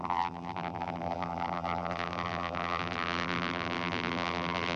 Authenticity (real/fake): fake